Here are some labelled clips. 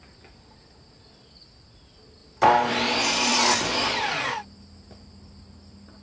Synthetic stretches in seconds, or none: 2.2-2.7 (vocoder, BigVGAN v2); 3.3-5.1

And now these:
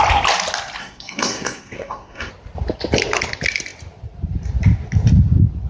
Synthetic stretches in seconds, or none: 0.8-2.3 (codec, SNAC)

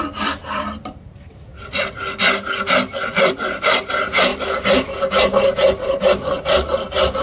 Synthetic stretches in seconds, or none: 0.0-1.5 (vocoder, BigVGAN v2); 3.2-4.3